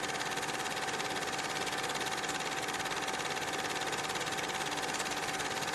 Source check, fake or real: real